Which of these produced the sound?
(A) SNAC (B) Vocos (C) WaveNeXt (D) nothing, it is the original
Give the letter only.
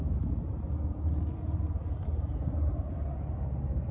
D